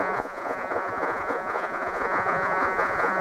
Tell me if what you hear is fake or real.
fake